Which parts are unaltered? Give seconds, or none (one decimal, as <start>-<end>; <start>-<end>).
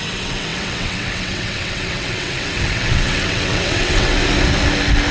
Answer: 4.2-5.1